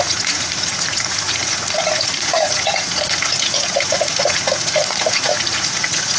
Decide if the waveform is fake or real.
fake